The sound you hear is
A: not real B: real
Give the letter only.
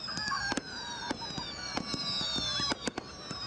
B